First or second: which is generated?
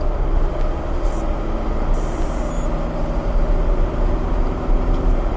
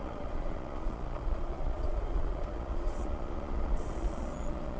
second